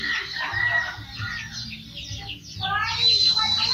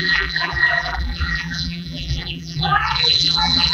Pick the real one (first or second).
first